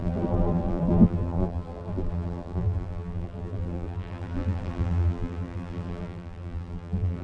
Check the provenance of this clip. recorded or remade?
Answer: remade